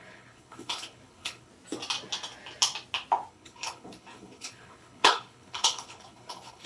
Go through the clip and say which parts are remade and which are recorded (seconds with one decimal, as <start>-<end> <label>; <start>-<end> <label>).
0.0-1.5 remade; 1.5-3.3 recorded; 3.3-6.7 remade